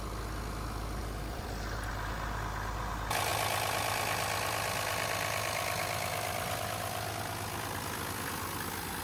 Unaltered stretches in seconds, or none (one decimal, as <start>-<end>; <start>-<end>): 0.0-1.0; 1.9-9.0